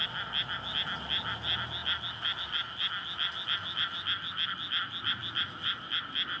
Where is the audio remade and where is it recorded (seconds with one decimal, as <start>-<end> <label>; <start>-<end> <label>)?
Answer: 0.0-6.4 recorded